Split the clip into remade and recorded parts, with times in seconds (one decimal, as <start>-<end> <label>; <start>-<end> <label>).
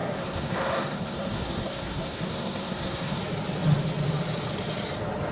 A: 0.0-3.2 remade; 3.2-5.3 recorded